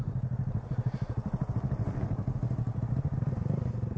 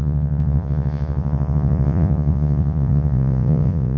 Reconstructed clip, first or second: second